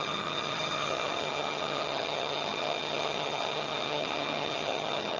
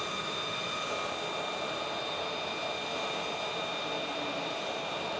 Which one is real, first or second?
second